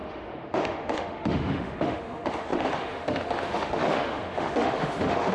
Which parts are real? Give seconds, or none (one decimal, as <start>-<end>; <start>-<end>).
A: none

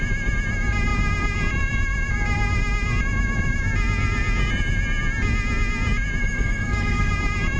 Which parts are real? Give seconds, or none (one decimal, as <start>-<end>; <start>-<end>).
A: 0.0-6.2; 7.1-7.6

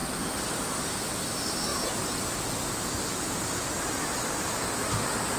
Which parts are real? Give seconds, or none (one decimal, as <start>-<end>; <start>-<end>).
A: 0.0-5.4

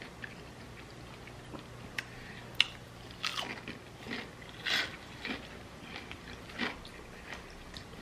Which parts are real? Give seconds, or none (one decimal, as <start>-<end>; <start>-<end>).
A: 0.0-8.0

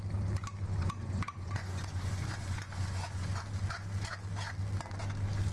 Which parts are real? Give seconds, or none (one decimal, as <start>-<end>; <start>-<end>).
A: 0.0-0.8; 3.4-5.5

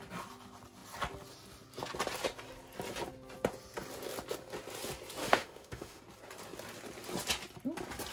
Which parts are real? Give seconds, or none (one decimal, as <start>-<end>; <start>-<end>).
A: 0.0-5.2; 6.0-8.1